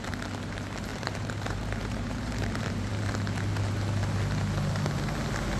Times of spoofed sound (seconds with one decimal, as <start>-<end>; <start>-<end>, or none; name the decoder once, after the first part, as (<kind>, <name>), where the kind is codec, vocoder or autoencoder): 0.9-2.9 (vocoder, BigVGAN v2)